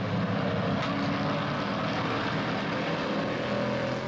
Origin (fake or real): real